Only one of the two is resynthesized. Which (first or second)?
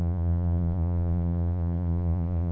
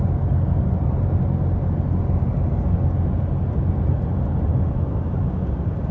first